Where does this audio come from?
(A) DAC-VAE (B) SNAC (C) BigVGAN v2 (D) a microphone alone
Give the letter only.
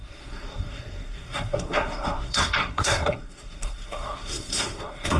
B